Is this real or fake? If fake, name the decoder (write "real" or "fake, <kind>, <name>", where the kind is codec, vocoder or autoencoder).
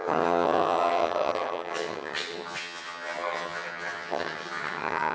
fake, vocoder, HiFi-GAN